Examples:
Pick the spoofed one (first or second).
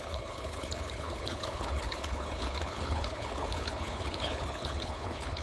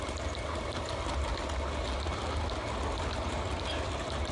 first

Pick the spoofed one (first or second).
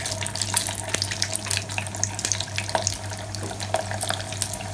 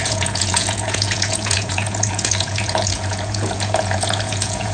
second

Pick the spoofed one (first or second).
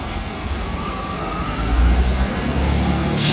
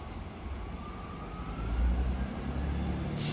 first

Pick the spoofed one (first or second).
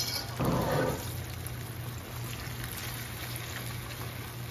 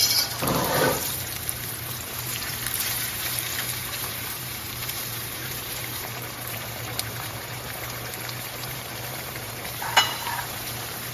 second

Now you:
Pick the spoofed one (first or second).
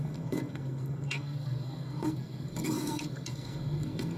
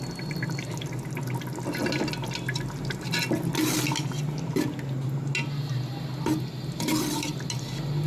first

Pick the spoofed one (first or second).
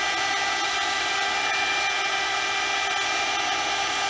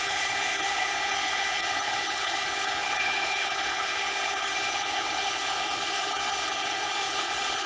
second